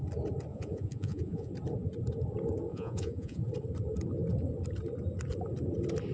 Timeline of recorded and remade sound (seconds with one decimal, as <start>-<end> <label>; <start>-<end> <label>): 0.0-0.5 recorded; 0.5-1.5 remade; 1.5-2.7 recorded; 2.7-3.5 remade; 3.5-6.1 recorded